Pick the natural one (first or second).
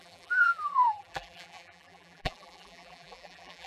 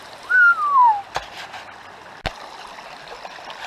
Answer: second